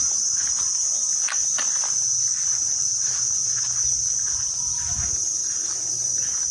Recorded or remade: recorded